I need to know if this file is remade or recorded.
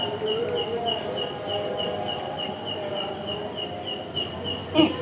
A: recorded